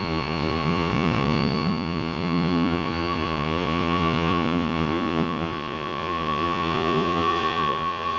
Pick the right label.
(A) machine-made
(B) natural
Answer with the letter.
A